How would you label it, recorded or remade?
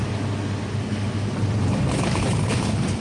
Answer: recorded